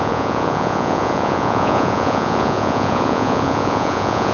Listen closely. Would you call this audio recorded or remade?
remade